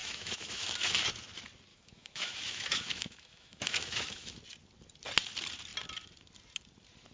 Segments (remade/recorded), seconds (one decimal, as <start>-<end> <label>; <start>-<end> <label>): 0.0-0.9 remade; 0.9-1.7 recorded; 1.7-4.4 remade; 4.4-7.1 recorded